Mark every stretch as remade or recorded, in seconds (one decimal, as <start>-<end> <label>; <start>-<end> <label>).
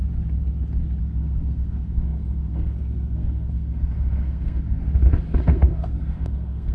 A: 0.0-1.0 recorded; 1.0-4.8 remade; 4.8-5.4 recorded; 5.4-6.7 remade